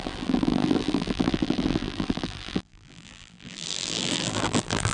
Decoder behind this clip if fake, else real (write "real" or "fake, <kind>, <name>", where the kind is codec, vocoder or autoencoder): fake, vocoder, BigVGAN v2